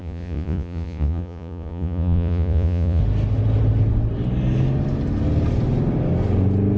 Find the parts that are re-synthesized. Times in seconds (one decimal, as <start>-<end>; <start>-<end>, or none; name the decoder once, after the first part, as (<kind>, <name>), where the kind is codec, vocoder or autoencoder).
0.0-3.0 (vocoder, Vocos)